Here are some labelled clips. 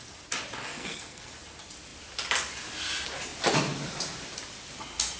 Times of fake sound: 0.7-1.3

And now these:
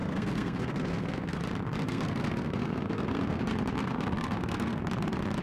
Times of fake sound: 0.0-1.4; 1.8-3.4; 3.8-4.8

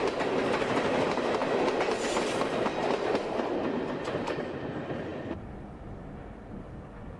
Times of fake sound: none

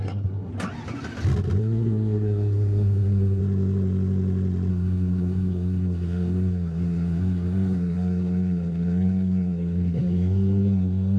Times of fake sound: 0.0-0.5; 1.6-3.4; 4.7-11.2

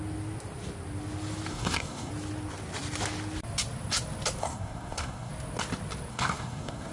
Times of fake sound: 1.5-2.1; 4.4-5.3; 6.1-6.9

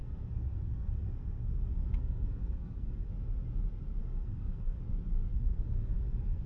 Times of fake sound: 0.0-3.1; 4.0-4.8; 5.3-6.5